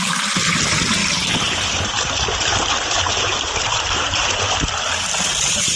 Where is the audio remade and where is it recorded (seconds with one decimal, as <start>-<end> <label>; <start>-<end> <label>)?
0.0-1.0 recorded; 1.0-4.5 remade; 4.5-5.8 recorded